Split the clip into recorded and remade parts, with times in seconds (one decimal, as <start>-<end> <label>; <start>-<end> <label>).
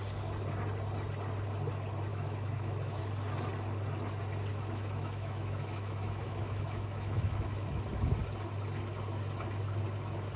0.0-2.1 recorded; 2.1-3.0 remade; 3.0-4.5 recorded; 4.5-7.8 remade; 7.8-10.4 recorded